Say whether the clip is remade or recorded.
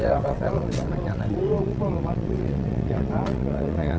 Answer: remade